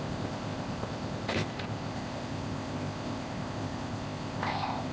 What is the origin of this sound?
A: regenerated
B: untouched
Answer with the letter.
A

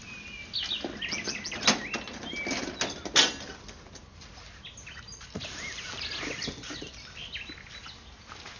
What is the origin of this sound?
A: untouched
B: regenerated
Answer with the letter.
A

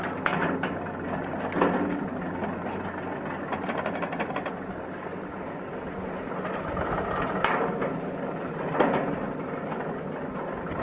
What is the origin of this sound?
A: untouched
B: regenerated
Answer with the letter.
A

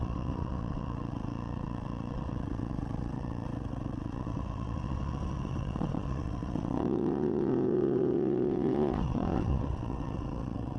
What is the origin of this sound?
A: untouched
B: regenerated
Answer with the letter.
B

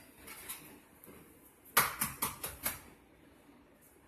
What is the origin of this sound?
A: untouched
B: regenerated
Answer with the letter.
A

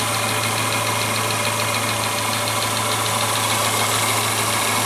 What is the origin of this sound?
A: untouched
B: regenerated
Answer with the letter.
A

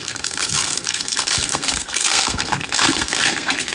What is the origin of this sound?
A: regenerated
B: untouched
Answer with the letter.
A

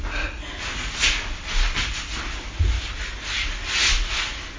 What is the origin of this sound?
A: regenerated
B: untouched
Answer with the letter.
B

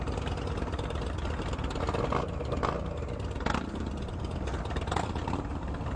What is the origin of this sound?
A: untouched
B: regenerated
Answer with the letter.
A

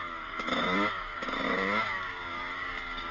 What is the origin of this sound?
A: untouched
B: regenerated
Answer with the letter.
B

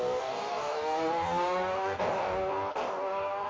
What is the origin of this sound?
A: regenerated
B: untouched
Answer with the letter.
A